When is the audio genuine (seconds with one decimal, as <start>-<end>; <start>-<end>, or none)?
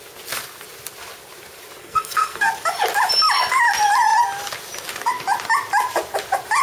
0.0-1.8; 2.5-6.6